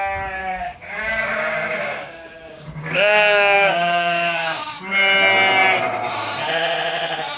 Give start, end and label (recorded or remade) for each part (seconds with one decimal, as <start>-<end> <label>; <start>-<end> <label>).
0.0-0.4 recorded; 0.4-4.8 remade; 4.8-7.4 recorded